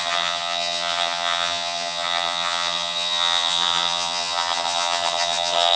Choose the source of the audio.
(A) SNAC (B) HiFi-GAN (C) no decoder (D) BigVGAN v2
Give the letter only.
B